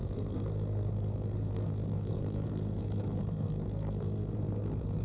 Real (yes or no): no